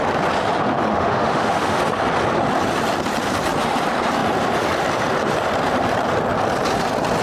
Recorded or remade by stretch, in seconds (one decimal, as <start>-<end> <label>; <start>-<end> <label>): 0.0-0.9 recorded; 0.9-1.8 remade; 1.8-7.2 recorded